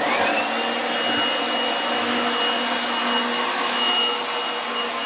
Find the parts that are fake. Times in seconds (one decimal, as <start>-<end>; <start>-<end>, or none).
3.5-4.2